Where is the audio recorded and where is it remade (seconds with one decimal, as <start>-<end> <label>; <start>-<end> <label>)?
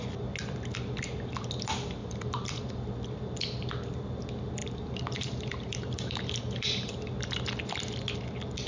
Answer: 0.0-2.0 recorded; 2.0-2.6 remade; 2.6-4.6 recorded; 4.6-6.9 remade; 6.9-8.7 recorded